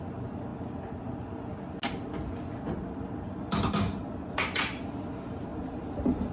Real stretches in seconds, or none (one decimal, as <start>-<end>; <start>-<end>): 0.0-5.5